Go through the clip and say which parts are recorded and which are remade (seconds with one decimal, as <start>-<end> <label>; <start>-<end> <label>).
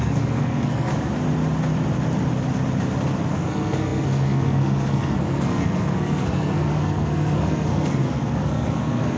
0.0-0.9 remade; 0.9-3.3 recorded; 3.3-9.2 remade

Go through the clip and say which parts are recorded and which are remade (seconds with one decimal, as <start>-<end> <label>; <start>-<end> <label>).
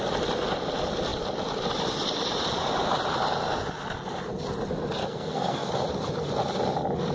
0.0-5.0 recorded; 5.0-5.7 remade; 5.7-7.1 recorded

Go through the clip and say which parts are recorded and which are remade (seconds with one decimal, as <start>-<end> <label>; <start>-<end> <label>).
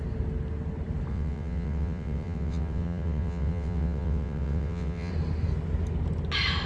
0.0-1.1 recorded; 1.1-5.1 remade; 5.1-6.7 recorded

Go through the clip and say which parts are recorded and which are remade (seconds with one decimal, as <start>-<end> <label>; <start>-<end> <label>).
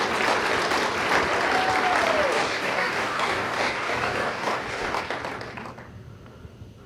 0.0-2.3 recorded; 2.3-5.0 remade; 5.0-6.9 recorded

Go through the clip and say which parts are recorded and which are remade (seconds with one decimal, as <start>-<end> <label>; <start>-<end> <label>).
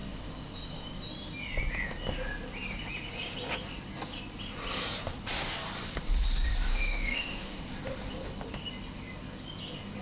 0.0-6.7 recorded; 6.7-7.6 remade; 7.6-10.0 recorded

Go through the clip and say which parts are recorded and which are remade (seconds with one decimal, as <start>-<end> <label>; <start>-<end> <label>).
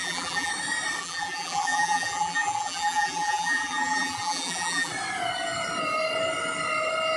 0.0-0.5 remade; 0.5-1.0 recorded; 1.0-4.9 remade; 4.9-7.2 recorded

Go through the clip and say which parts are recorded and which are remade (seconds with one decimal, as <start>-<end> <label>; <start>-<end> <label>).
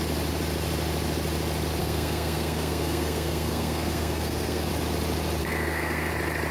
0.0-1.8 recorded; 1.8-4.7 remade; 4.7-5.4 recorded; 5.4-6.1 remade; 6.1-6.5 recorded